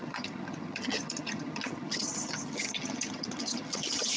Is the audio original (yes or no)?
no